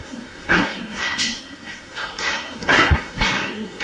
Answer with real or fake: fake